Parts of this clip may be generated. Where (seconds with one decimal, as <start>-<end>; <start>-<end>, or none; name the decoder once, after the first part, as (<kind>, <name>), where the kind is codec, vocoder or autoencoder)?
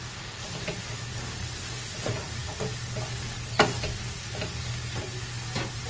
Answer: none